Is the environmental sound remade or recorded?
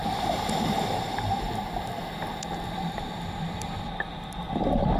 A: remade